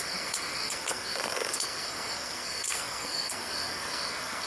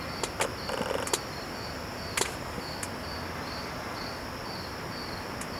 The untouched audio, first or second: second